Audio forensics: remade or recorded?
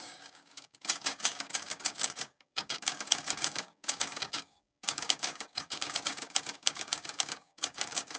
remade